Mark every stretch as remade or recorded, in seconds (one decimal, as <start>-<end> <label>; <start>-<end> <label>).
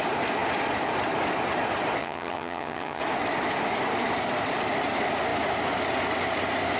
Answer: 0.0-2.0 recorded; 2.0-3.0 remade; 3.0-6.8 recorded